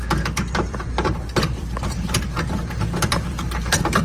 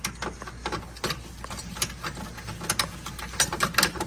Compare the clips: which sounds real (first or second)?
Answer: second